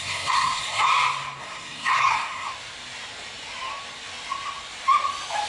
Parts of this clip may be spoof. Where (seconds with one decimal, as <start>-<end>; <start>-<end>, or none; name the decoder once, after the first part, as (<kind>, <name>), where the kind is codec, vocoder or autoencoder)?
0.0-0.9 (codec, SNAC); 1.4-2.5